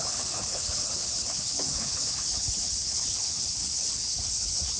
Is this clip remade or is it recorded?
remade